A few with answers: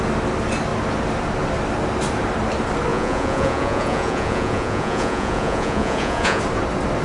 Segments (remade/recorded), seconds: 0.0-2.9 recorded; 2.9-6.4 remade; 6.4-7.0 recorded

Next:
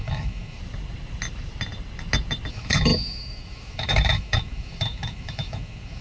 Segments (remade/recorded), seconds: 0.0-0.6 remade; 0.6-2.5 recorded; 2.5-6.0 remade